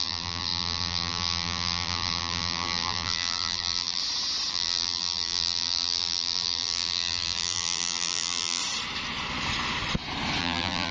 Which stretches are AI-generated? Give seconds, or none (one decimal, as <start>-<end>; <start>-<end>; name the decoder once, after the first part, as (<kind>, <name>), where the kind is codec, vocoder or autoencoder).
0.0-4.0 (vocoder, BigVGAN v2); 4.5-8.6; 10.4-10.9